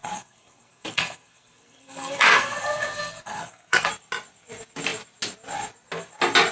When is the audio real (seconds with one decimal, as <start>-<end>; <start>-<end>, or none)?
3.9-6.5